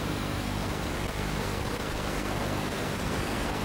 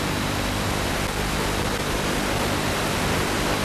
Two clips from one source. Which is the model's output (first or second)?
first